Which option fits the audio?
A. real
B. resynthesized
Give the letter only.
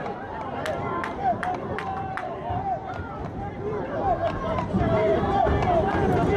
B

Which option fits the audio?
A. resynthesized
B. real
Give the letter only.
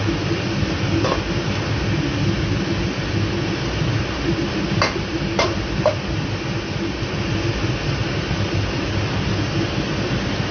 B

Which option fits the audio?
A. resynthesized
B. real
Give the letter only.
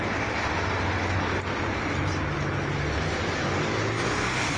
B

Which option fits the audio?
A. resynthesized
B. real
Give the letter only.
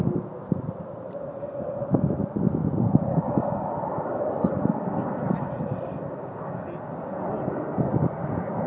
B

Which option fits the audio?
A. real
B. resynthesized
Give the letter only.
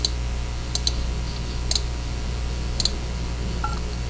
A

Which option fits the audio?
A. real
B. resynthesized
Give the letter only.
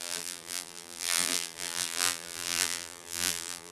B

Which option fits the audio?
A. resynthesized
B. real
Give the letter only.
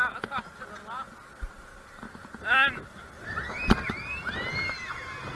B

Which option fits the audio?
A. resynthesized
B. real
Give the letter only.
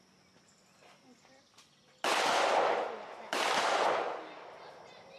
B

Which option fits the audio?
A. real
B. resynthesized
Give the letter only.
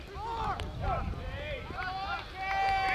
A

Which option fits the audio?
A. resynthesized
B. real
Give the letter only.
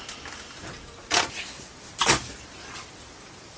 B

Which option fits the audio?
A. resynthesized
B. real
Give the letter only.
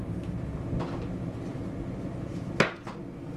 B